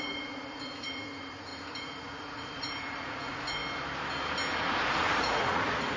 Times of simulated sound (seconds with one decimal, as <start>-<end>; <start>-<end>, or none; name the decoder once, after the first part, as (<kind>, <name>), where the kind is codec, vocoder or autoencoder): 0.0-3.6 (vocoder, Vocos); 4.8-6.0